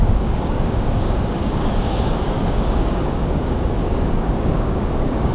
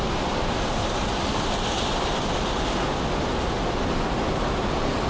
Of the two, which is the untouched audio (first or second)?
second